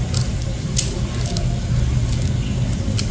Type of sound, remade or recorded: recorded